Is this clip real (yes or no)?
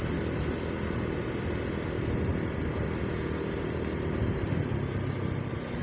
yes